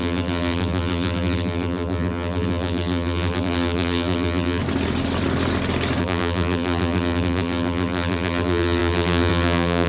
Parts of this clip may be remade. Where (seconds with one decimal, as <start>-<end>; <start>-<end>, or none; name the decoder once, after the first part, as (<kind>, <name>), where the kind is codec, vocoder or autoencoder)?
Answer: 0.0-4.6 (vocoder, BigVGAN v2); 6.0-9.9